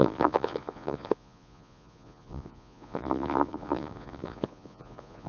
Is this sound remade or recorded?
remade